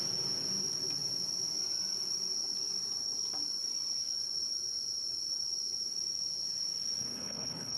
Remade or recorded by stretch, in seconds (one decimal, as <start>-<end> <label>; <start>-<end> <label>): 0.0-7.0 recorded; 7.0-7.8 remade